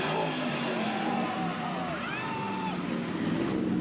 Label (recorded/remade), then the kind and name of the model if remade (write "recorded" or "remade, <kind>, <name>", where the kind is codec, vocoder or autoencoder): recorded